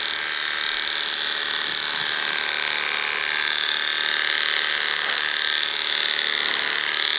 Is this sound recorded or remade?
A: recorded